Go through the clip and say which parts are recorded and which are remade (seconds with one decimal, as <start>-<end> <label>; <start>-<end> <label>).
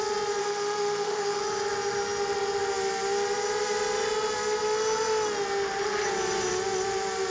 0.0-0.4 recorded; 0.4-1.4 remade; 1.4-7.3 recorded